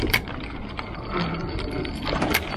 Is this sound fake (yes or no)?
no